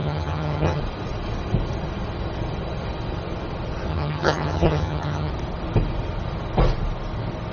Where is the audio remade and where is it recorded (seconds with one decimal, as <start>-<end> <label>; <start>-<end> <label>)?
0.0-0.8 remade; 0.8-3.9 recorded; 3.9-5.3 remade; 5.3-7.5 recorded